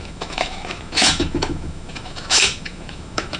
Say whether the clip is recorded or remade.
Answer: remade